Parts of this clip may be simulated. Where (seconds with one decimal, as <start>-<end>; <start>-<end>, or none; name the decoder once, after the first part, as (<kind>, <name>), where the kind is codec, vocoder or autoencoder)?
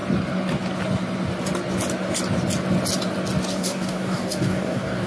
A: 3.5-5.1 (codec, DAC)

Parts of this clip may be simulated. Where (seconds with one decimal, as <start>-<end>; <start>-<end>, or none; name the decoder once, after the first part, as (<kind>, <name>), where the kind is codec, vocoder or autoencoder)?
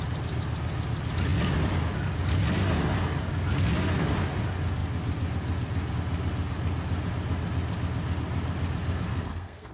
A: 9.1-9.7 (codec, SNAC)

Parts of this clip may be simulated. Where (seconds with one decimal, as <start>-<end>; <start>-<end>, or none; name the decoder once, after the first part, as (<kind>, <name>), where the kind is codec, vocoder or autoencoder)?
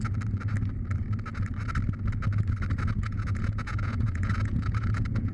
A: 3.0-5.3 (vocoder, Vocos)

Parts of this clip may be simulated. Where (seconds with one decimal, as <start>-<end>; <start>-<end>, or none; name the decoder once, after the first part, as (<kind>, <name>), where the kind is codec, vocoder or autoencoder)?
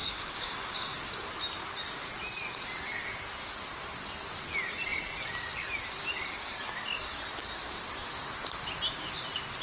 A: 0.0-1.1 (codec, DAC)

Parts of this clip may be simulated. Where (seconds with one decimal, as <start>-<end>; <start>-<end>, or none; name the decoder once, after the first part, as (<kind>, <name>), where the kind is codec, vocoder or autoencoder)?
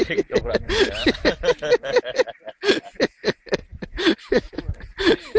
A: 3.6-4.5 (vocoder, BigVGAN v2)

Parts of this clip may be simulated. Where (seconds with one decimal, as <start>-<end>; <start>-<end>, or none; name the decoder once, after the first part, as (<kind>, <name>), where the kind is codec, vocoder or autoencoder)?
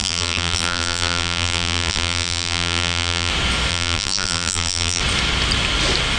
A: 0.0-3.3 (vocoder, BigVGAN v2); 3.7-5.0